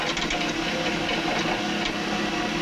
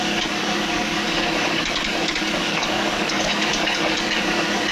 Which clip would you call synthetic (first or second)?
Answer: second